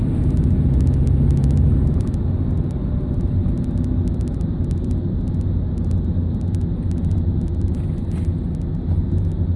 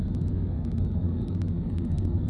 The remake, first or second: second